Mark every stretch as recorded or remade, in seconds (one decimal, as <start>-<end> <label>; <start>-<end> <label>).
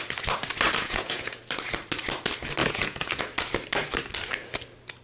0.0-0.8 recorded; 0.8-1.4 remade; 1.4-2.6 recorded; 2.6-3.2 remade; 3.2-5.0 recorded